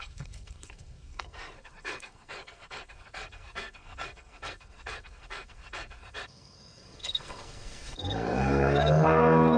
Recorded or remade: remade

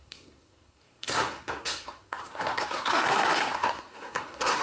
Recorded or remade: remade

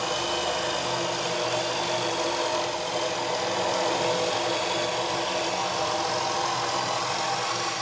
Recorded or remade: recorded